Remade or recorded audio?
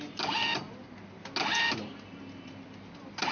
recorded